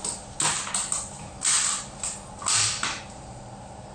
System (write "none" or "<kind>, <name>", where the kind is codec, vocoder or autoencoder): none